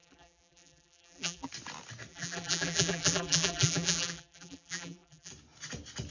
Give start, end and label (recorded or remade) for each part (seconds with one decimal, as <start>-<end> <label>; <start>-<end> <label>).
0.0-1.5 remade; 1.5-2.1 recorded; 2.1-5.3 remade; 5.3-6.1 recorded